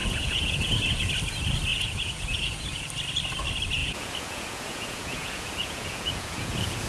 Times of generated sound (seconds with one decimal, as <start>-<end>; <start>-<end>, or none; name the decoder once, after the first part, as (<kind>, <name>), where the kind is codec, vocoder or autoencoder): 0.0-1.1 (vocoder, Vocos); 1.7-2.9; 3.8-6.9

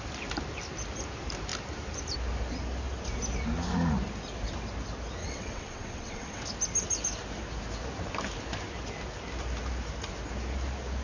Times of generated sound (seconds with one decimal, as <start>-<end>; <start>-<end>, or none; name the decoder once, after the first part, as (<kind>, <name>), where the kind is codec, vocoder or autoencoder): 5.2-6.4 (vocoder, WaveNeXt)

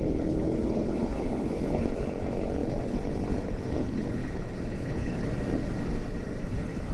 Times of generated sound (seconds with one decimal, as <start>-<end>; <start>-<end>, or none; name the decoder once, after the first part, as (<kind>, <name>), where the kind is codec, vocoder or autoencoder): 0.0-5.3 (codec, HILCodec); 6.4-6.9